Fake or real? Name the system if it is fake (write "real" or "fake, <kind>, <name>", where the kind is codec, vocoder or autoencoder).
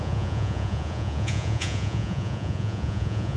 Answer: fake, vocoder, Vocos